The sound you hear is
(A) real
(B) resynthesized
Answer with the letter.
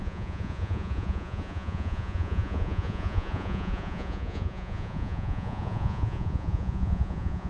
B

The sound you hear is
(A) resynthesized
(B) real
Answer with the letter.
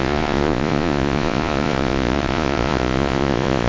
A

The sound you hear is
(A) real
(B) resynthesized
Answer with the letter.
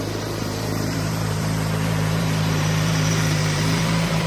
B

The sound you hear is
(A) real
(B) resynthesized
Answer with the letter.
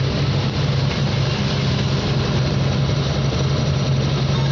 A